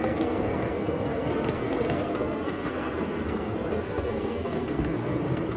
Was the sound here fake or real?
fake